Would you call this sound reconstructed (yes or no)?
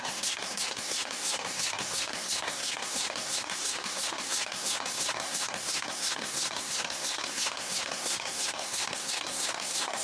yes